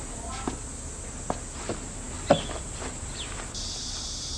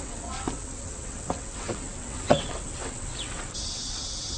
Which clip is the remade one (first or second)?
second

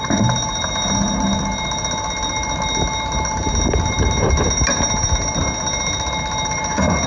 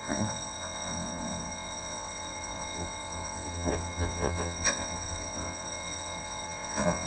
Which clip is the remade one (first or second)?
second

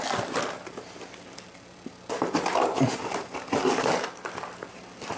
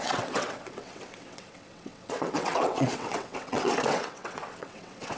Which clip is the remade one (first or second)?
second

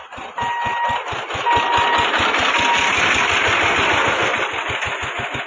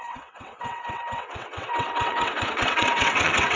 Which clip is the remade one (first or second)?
second